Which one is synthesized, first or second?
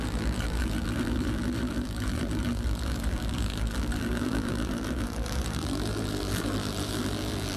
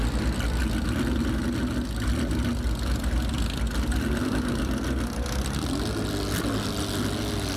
first